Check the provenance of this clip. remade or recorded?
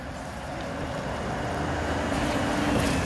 recorded